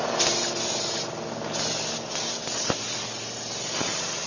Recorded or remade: recorded